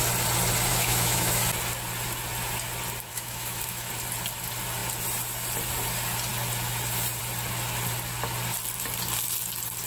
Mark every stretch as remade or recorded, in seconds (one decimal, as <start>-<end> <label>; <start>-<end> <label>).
0.0-0.7 recorded; 0.7-1.4 remade; 1.4-3.1 recorded; 3.1-3.9 remade; 3.9-9.9 recorded